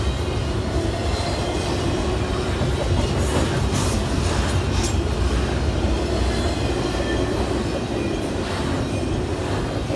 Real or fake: real